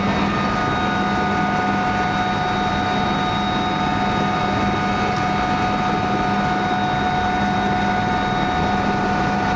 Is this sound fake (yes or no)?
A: no